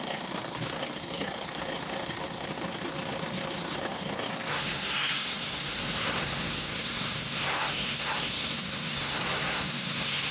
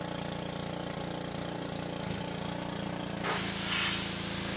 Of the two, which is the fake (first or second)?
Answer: first